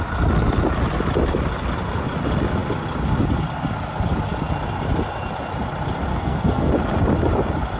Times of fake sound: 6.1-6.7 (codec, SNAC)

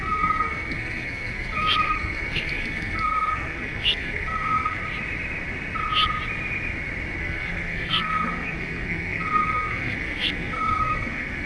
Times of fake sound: 0.0-4.8 (codec, SNAC); 7.2-11.5

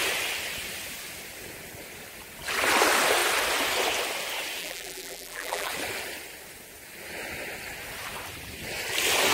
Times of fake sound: 4.6-5.7 (vocoder, BigVGAN v2)

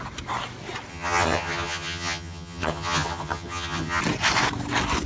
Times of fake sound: 0.9-4.0 (vocoder, HiFi-GAN)